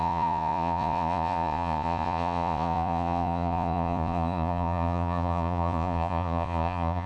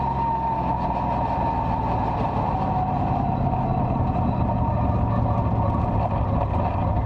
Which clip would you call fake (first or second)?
first